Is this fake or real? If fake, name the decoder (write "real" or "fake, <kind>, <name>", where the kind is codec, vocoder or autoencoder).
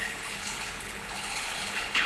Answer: fake, codec, HILCodec